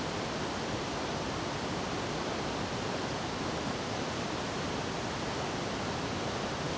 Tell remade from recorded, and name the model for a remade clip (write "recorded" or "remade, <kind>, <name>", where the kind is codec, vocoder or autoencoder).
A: recorded